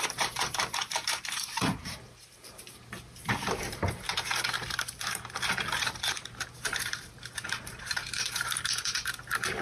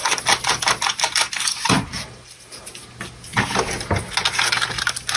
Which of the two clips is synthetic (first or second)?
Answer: first